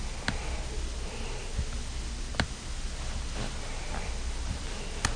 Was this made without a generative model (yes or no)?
yes